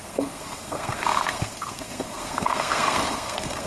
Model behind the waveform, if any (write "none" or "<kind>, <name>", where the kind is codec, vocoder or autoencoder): codec, SNAC